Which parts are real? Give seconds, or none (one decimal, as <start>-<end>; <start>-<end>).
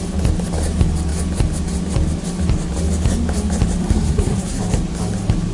0.0-3.8; 4.6-5.5